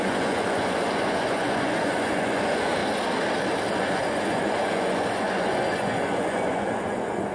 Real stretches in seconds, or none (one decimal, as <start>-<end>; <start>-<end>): 2.8-3.7